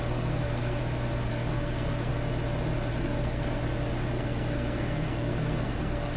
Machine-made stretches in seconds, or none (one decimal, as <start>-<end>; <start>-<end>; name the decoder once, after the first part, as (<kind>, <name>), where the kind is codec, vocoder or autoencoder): 0.0-0.8 (codec, SNAC); 1.3-2.1; 2.9-3.6; 4.1-6.2